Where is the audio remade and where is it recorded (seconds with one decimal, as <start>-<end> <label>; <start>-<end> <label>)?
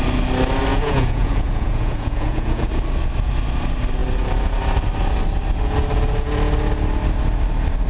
0.0-0.7 recorded; 0.7-2.7 remade; 2.7-7.9 recorded